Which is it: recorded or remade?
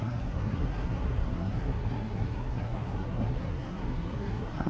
remade